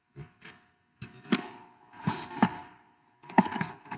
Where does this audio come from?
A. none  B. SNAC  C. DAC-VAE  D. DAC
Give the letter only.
D